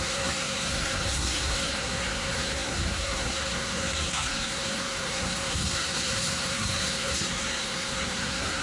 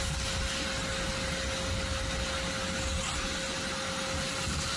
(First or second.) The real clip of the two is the second